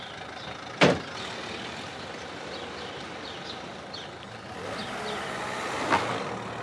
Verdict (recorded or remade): recorded